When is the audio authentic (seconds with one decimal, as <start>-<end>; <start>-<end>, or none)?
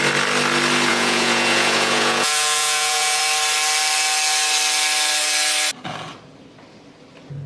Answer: 0.0-0.9; 3.2-7.5